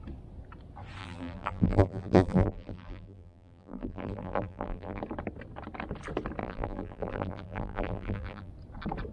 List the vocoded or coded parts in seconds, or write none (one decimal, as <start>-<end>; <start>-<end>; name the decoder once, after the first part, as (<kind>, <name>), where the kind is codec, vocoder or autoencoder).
1.0-5.0 (vocoder, BigVGAN v2); 6.4-8.5